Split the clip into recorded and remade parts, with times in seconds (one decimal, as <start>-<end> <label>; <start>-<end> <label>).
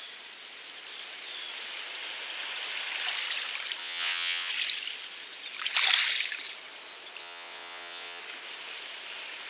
0.0-3.8 recorded; 3.8-4.5 remade; 4.5-7.2 recorded; 7.2-8.2 remade; 8.2-9.5 recorded